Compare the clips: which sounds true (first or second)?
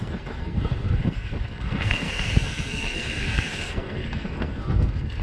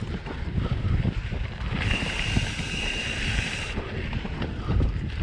second